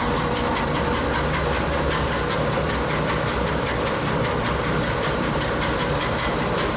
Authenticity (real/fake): fake